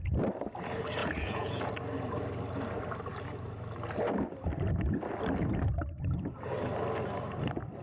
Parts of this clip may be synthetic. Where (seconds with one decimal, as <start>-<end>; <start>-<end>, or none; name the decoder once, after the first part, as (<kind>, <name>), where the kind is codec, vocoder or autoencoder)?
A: 1.0-1.7 (vocoder, Vocos)